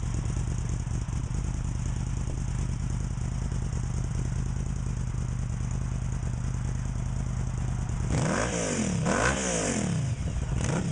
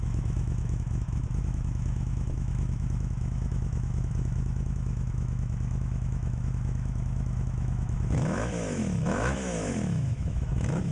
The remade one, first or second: second